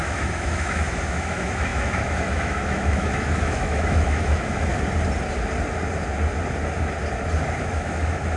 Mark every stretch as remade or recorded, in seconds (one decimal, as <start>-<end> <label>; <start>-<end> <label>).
0.0-4.7 remade; 4.7-7.6 recorded; 7.6-8.4 remade